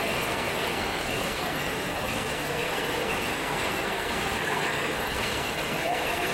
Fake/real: fake